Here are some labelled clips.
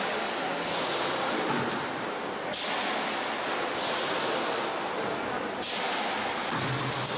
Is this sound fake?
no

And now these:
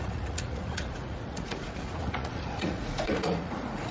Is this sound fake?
yes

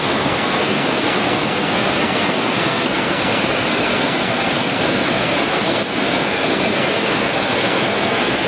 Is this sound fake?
yes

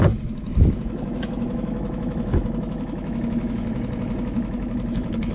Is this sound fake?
yes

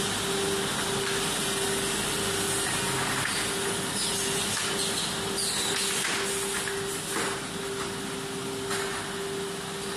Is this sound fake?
no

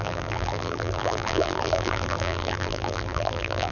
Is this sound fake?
yes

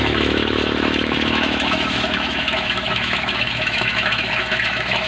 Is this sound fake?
yes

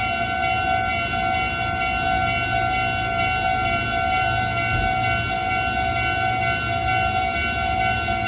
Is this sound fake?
no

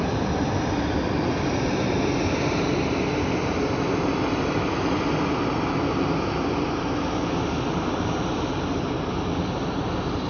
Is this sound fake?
yes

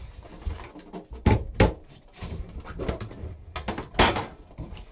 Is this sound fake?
no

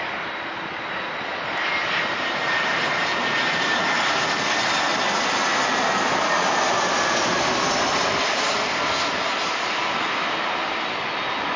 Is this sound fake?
no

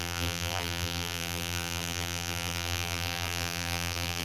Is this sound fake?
yes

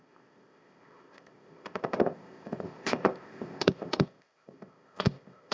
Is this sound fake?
yes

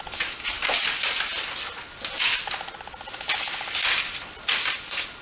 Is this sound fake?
no